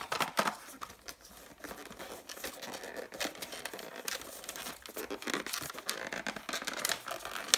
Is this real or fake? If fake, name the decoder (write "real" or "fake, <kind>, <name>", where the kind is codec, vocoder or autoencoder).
real